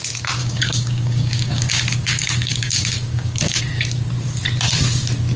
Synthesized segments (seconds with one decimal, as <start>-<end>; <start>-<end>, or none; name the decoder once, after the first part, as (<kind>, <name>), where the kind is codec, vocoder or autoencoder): 0.4-3.6 (codec, DAC)

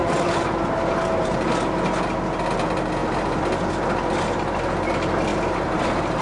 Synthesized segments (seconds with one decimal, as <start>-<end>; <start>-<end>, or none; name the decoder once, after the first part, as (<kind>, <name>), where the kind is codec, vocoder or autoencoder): 0.0-1.5 (vocoder, BigVGAN v2); 5.3-6.2

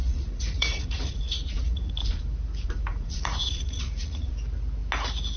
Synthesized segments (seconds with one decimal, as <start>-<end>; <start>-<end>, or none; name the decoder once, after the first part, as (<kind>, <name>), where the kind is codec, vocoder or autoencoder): 0.0-1.9 (vocoder, Vocos); 2.9-4.3

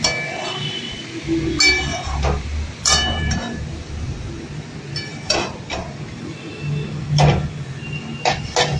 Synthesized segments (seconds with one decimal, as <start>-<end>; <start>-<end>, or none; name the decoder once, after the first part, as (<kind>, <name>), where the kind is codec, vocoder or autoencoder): 1.9-4.3 (vocoder, BigVGAN v2); 5.1-6.0

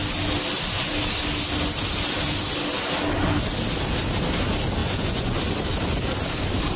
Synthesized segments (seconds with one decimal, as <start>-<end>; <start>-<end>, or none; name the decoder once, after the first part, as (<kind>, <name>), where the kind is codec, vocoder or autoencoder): 4.8-5.4 (vocoder, Vocos)

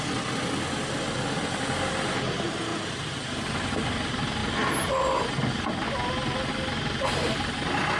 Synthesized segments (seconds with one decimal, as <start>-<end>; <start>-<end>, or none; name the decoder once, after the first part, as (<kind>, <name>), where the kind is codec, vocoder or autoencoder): none

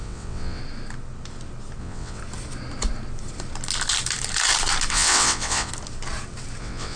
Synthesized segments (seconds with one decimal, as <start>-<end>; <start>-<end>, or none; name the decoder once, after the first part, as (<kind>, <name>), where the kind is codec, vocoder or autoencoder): 0.0-0.6 (vocoder, WaveNeXt); 1.8-2.2; 4.9-5.7; 6.6-7.0